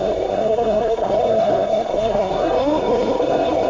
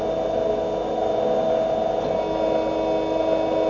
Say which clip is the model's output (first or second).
first